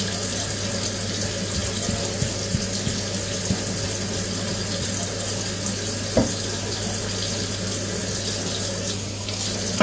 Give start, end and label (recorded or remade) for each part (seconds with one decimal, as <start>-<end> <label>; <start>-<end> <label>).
0.0-9.8 recorded